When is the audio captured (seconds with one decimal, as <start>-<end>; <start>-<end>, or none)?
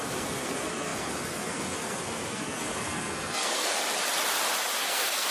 3.8-4.8